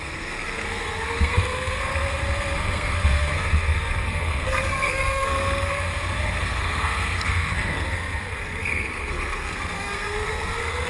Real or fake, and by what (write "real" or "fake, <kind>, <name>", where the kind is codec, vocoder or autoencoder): fake, codec, SNAC